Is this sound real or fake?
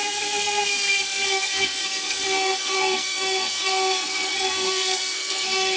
fake